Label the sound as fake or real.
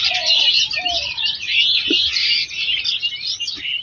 real